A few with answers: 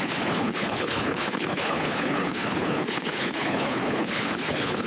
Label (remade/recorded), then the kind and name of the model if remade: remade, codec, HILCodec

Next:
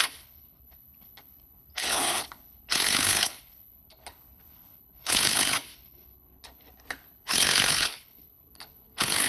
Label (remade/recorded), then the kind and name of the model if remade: remade, codec, HILCodec